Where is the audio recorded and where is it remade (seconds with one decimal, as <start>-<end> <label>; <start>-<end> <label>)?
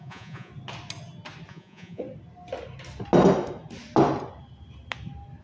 0.0-0.5 remade; 0.5-1.5 recorded; 1.5-2.0 remade; 2.0-5.4 recorded